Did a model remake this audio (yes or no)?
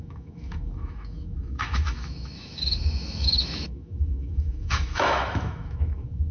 yes